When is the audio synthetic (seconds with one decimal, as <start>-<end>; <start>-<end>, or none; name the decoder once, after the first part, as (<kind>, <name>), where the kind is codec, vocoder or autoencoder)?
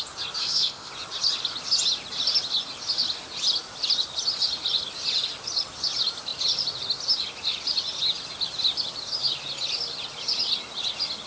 0.4-0.9 (codec, ZipCodec)